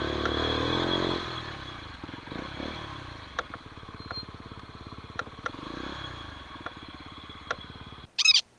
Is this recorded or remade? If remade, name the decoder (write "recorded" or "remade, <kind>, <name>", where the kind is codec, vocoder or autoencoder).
recorded